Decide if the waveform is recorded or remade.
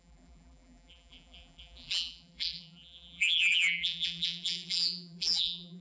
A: remade